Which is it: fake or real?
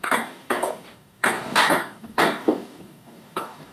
fake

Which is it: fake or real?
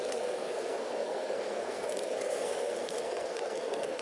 fake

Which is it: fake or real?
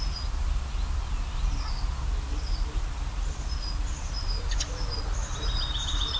real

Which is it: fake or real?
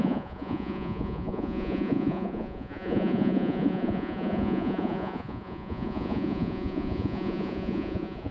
fake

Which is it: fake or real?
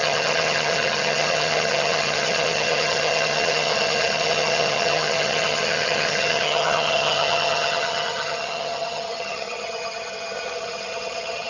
fake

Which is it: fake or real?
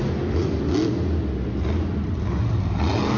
real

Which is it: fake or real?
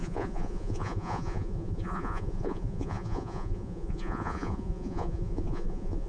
fake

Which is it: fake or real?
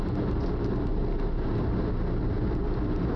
real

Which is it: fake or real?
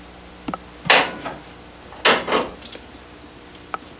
real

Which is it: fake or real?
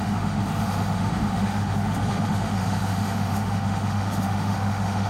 fake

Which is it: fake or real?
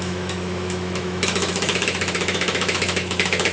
fake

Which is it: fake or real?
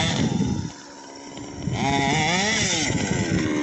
real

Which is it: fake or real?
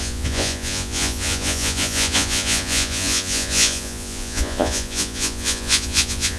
fake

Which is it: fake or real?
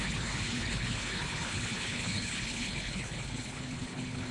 fake